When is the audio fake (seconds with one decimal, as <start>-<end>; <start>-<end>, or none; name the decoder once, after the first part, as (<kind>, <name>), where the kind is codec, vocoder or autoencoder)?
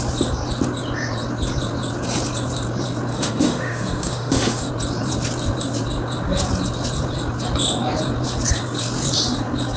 3.1-4.7 (autoencoder, DAC-VAE)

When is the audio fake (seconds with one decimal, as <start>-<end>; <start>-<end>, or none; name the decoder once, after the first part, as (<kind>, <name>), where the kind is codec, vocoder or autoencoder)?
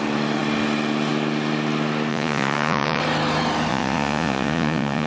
2.1-3.0 (vocoder, Vocos); 3.7-5.1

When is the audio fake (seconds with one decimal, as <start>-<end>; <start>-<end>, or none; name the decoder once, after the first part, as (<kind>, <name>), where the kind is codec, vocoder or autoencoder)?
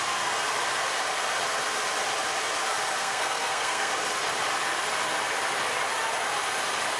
3.0-3.9 (codec, SNAC)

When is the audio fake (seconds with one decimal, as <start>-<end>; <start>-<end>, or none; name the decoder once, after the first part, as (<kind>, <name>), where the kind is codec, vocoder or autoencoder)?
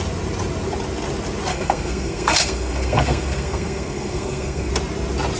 1.5-4.7 (codec, SNAC)